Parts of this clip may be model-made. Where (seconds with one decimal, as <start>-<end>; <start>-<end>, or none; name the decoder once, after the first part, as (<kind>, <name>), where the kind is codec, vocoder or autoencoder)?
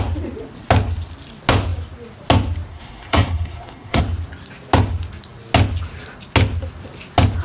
2.7-4.0 (codec, SNAC)